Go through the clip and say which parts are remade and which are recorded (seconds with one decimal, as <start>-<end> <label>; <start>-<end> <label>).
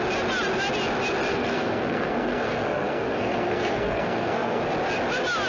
0.0-1.3 recorded; 1.3-4.6 remade; 4.6-5.5 recorded